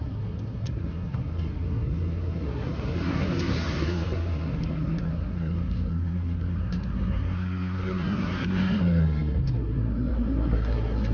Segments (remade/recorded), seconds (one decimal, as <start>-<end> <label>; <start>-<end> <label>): 0.0-11.1 remade